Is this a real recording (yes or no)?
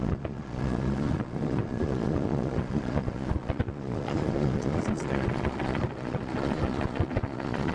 no